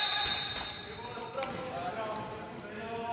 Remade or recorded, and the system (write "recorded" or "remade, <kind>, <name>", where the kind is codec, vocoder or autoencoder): recorded